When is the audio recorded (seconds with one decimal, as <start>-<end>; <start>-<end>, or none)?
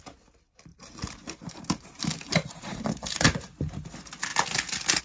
0.0-0.7; 3.6-5.0